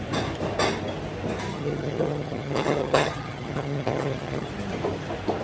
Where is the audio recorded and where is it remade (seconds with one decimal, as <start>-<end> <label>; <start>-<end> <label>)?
0.0-1.5 recorded; 1.5-4.5 remade; 4.5-5.4 recorded